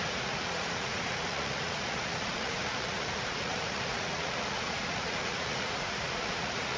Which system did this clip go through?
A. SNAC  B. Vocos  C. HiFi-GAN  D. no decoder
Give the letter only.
B